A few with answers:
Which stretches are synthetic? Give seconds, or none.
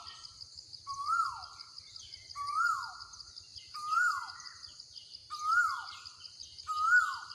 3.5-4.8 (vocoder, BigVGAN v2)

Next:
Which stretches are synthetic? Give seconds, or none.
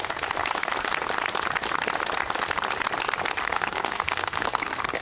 3.4-5.0 (codec, SNAC)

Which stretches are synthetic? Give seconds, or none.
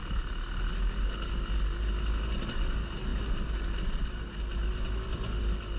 none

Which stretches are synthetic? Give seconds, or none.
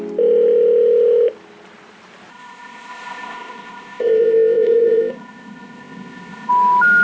2.3-6.5 (codec, ZipCodec)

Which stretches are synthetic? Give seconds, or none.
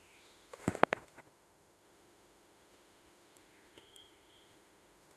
0.0-5.2 (autoencoder, DAC-VAE)